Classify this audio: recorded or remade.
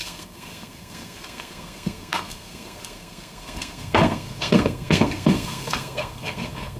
remade